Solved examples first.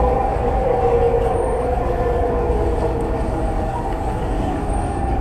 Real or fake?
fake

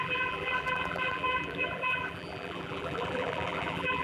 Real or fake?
fake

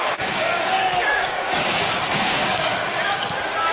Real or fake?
fake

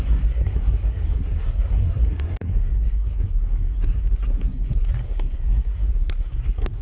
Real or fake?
fake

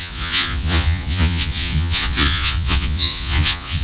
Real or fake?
fake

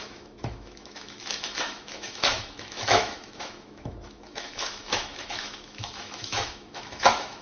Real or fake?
fake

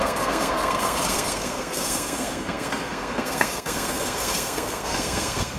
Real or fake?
fake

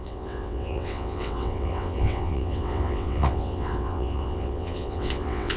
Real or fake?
fake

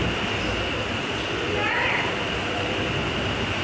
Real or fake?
real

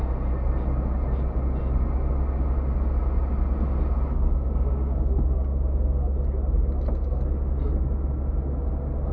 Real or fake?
real